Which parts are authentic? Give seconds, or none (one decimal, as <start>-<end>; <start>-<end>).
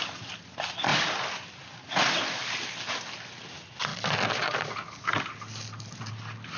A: 0.0-6.6